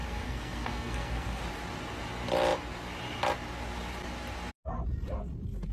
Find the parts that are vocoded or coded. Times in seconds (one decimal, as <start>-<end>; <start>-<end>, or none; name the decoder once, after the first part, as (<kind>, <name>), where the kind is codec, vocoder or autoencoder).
0.0-1.4 (codec, SNAC)

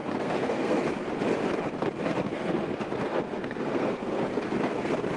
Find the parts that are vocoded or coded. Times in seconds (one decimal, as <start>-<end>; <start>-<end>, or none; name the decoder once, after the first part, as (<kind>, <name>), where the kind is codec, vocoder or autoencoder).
0.0-0.8 (codec, SNAC); 2.1-5.2